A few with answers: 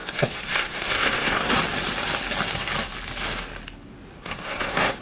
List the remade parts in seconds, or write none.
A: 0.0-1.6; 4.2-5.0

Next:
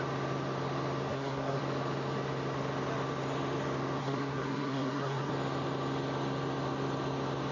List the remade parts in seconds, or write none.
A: 1.1-1.6; 4.0-5.3